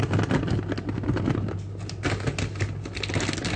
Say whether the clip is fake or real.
real